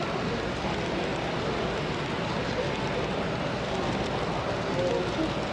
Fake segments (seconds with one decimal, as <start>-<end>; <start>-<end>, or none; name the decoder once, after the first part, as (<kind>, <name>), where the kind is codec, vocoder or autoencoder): none